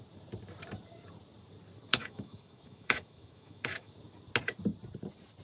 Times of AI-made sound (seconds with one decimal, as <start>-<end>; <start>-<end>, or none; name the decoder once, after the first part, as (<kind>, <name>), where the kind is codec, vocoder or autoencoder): 1.9-3.9 (autoencoder, DAC-VAE)